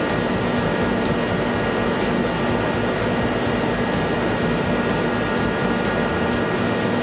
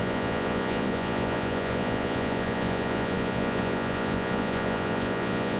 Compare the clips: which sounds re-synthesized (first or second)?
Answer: second